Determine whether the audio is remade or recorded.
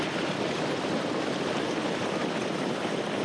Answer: recorded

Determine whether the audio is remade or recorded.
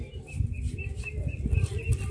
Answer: recorded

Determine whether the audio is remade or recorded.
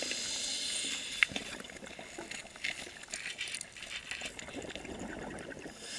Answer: recorded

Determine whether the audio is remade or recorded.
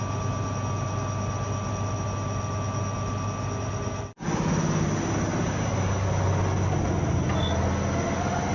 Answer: recorded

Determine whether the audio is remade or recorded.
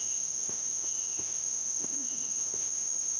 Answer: remade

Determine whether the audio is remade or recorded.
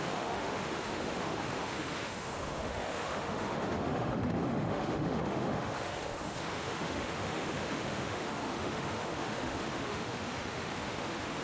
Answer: remade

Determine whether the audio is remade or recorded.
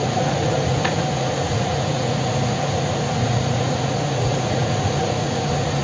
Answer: remade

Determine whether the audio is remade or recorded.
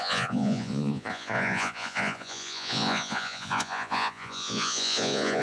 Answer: remade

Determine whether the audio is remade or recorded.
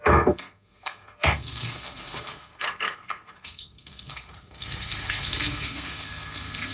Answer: remade